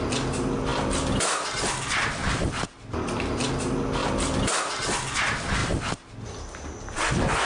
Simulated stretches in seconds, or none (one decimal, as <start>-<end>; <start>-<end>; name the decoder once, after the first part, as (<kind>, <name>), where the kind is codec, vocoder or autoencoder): none